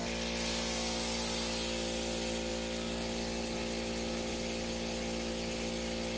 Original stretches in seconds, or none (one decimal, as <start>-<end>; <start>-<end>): 0.0-6.2